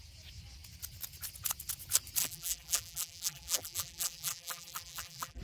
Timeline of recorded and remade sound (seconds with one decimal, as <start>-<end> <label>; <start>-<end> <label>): 0.0-2.2 recorded; 2.2-5.4 remade